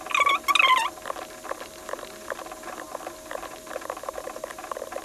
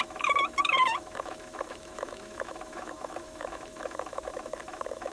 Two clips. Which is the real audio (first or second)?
first